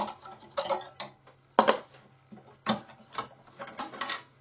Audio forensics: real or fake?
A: real